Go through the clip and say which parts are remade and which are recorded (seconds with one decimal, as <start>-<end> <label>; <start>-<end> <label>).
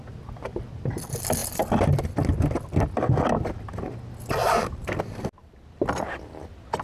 0.0-4.4 recorded; 4.4-5.0 remade; 5.0-6.8 recorded